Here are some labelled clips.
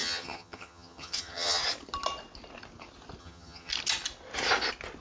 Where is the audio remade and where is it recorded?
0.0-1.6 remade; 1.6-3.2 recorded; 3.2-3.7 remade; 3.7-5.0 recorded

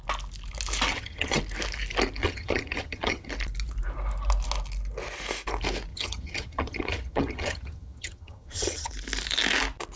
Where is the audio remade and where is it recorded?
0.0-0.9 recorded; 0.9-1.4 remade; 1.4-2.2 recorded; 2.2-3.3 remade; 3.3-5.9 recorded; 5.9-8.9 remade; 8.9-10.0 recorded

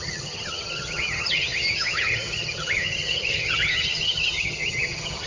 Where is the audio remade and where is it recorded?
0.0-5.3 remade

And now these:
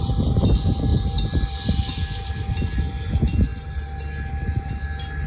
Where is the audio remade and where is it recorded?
0.0-5.3 recorded

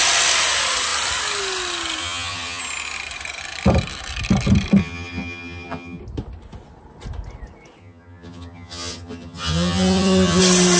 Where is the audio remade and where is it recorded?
0.0-2.0 recorded; 2.0-2.6 remade; 2.6-4.8 recorded; 4.8-6.0 remade; 6.0-7.8 recorded; 7.8-10.4 remade; 10.4-10.8 recorded

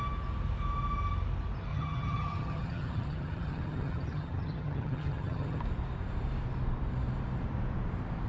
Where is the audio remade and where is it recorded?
0.0-1.7 recorded; 1.7-5.6 remade; 5.6-8.3 recorded

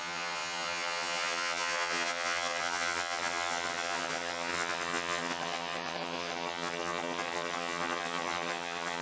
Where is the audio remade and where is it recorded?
0.0-9.0 remade